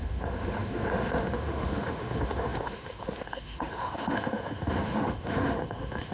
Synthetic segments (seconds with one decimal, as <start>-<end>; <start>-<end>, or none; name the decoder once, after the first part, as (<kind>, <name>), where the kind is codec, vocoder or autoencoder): 0.0-6.1 (autoencoder, DAC-VAE)